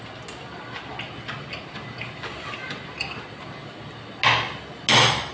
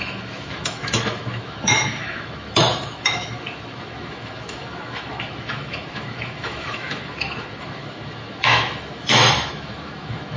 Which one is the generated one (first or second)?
second